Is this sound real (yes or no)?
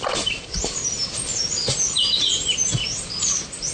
yes